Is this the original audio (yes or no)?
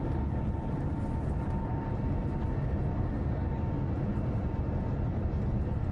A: yes